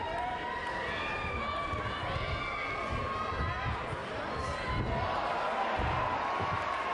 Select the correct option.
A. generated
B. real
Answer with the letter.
B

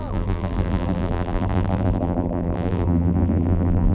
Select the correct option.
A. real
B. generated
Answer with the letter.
B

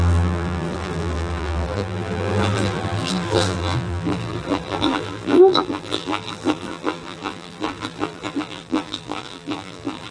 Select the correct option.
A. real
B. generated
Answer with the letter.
B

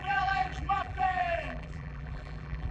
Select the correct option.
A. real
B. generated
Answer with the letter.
B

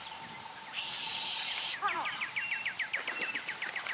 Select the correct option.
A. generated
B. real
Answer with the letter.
A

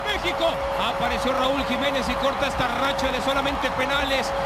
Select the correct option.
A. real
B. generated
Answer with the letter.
A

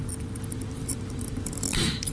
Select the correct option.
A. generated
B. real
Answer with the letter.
A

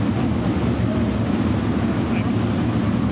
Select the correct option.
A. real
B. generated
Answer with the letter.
A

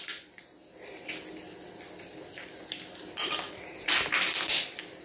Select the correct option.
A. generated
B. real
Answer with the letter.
B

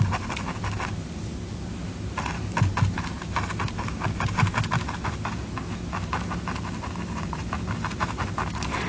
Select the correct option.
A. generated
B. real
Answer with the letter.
B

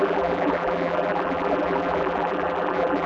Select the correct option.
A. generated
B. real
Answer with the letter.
A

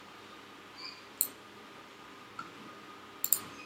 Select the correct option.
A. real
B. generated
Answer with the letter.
A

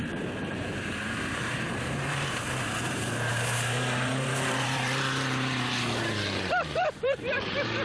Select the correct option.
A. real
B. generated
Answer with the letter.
B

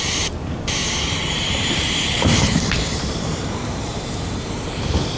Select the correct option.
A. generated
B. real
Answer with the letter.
A